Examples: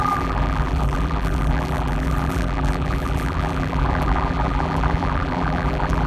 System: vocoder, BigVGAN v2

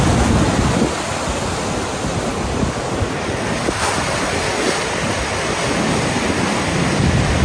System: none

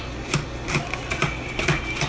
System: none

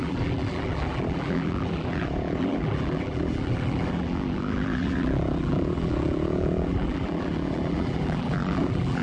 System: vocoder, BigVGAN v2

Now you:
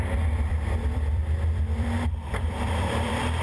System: vocoder, BigVGAN v2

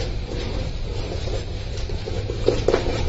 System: none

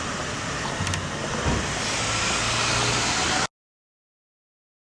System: none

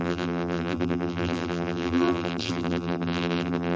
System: vocoder, BigVGAN v2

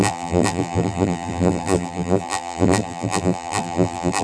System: vocoder, BigVGAN v2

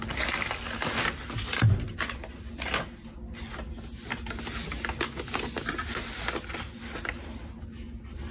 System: none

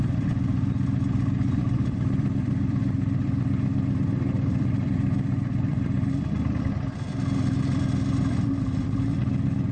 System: vocoder, BigVGAN v2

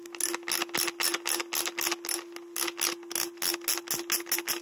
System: none